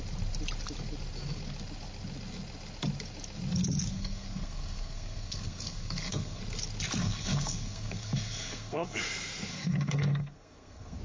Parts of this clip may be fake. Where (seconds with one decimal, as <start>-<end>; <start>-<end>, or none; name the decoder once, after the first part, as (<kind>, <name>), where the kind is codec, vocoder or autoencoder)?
3.9-6.4 (codec, SNAC); 7.0-9.0; 9.5-11.0